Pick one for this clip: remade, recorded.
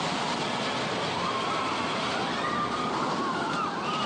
recorded